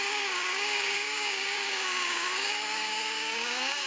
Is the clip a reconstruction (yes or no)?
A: yes